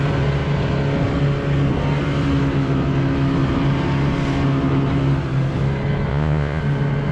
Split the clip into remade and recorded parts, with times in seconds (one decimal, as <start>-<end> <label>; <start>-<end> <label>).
0.0-6.1 recorded; 6.1-6.6 remade; 6.6-7.1 recorded